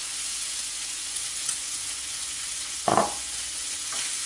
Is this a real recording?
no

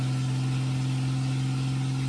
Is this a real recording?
yes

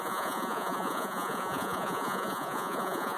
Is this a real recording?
no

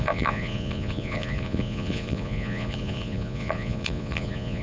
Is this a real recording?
no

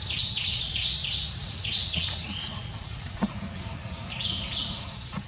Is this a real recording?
no